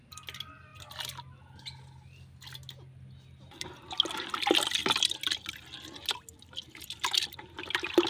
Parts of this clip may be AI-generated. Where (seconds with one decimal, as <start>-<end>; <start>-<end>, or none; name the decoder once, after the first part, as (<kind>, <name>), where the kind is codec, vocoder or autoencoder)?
none